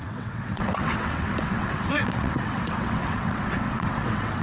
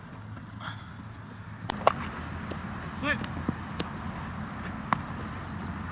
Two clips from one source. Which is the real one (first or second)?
second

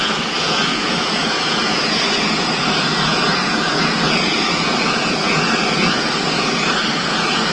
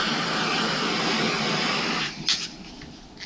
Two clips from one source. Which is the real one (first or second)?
second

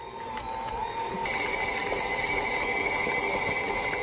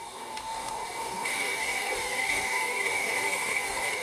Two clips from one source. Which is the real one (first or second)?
first